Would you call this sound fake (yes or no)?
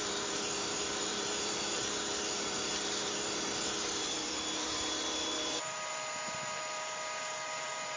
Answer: yes